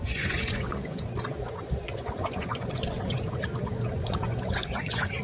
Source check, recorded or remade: remade